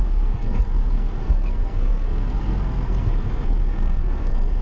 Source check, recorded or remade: remade